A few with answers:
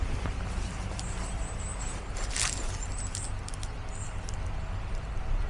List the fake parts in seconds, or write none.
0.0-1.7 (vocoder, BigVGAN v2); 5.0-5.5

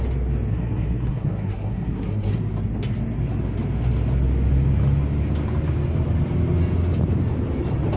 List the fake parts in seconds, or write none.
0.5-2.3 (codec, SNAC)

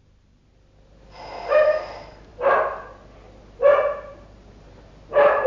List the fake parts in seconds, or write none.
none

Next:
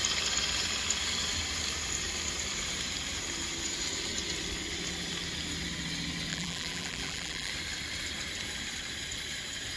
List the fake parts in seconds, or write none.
6.3-7.5 (vocoder, BigVGAN v2)

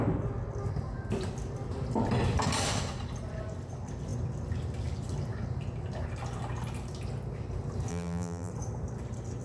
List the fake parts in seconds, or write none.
7.9-8.5 (vocoder, BigVGAN v2)

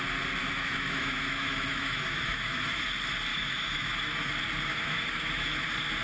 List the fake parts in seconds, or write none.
0.4-2.8 (autoencoder, DAC-VAE); 3.3-4.3; 4.7-5.5